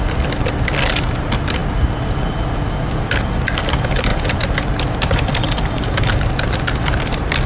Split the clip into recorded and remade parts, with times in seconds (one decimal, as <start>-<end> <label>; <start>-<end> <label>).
0.0-7.5 recorded